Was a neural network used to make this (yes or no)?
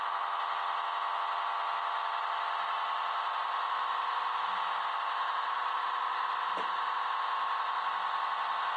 no